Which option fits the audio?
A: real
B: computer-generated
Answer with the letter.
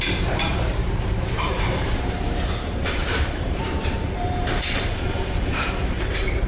B